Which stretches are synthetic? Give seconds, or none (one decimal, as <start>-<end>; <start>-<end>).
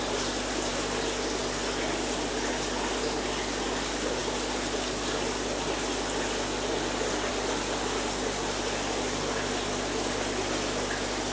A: none